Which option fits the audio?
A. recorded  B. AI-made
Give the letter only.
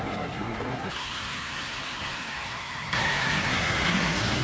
B